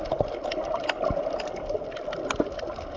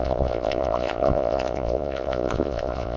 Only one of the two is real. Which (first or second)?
first